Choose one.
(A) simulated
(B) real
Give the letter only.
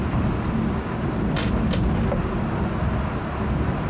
B